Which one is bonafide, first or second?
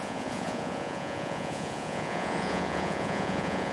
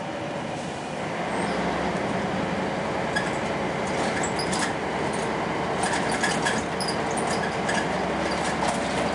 second